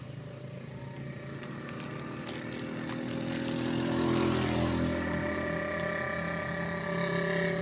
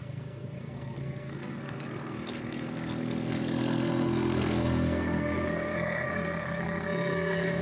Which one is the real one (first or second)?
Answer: first